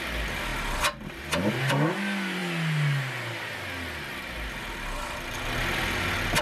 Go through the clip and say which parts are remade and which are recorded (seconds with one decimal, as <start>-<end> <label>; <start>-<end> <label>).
0.0-6.4 recorded